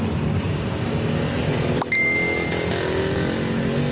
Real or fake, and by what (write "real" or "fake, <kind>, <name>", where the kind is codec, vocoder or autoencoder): real